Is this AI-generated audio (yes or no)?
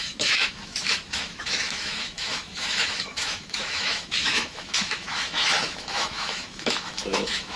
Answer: yes